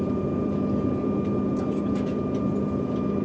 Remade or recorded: recorded